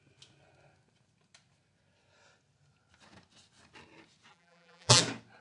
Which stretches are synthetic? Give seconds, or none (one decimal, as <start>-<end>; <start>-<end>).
4.3-5.0